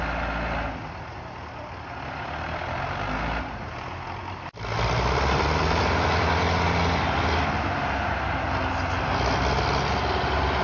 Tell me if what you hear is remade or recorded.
recorded